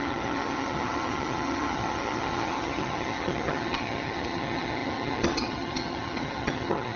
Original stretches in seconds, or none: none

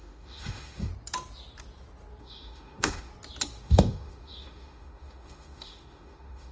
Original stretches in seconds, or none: 0.9-2.2; 3.1-3.6

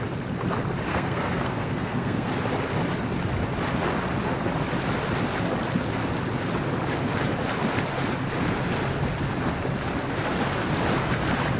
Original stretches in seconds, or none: 0.0-0.9; 2.3-11.6

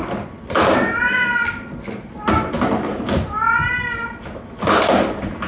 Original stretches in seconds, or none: 0.0-5.5

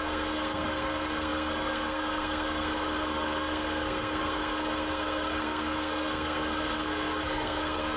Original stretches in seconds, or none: none

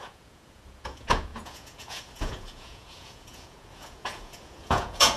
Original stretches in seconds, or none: none

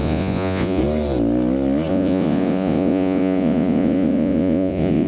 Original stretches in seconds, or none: 0.8-1.9

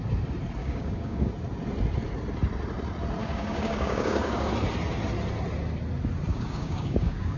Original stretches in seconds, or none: 0.0-0.6; 1.3-3.2; 4.5-6.3